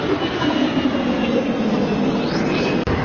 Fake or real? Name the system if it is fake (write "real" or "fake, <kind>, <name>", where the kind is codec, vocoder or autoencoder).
real